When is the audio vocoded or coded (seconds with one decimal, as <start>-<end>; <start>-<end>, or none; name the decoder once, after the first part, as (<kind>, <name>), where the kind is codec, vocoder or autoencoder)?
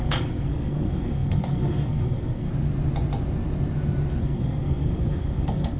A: 0.0-2.5 (codec, SNAC); 4.2-5.8